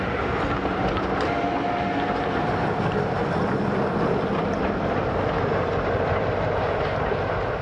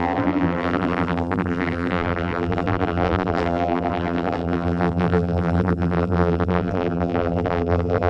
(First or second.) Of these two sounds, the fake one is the second